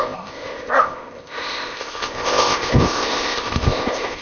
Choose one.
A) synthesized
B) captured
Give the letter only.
A